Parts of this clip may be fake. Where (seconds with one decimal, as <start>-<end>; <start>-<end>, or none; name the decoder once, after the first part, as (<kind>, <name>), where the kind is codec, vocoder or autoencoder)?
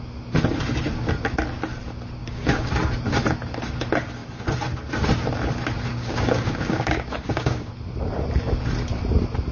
2.2-2.7 (codec, DAC); 5.9-7.7